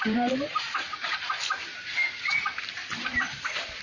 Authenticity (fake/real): fake